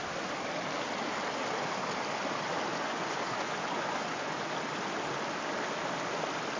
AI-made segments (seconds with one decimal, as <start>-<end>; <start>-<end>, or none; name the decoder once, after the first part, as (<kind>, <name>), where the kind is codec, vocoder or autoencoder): 2.7-4.4 (vocoder, Vocos)